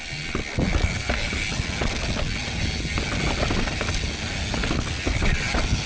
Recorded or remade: recorded